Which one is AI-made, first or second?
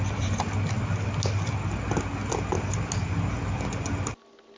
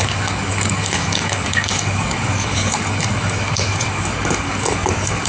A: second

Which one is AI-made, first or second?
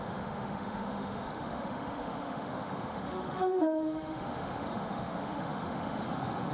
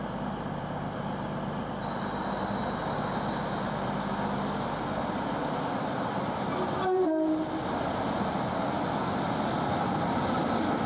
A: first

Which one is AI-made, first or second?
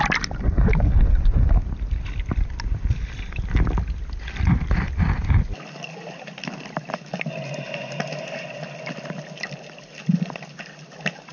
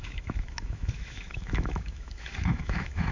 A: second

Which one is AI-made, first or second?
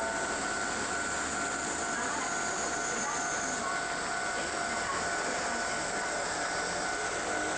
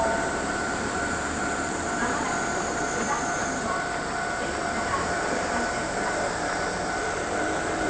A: second